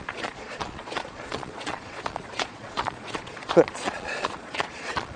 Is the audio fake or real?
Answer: fake